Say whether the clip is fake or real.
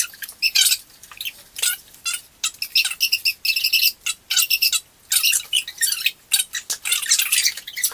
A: real